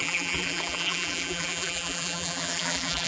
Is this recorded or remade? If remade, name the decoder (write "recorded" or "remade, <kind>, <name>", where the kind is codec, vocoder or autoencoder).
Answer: remade, vocoder, BigVGAN v2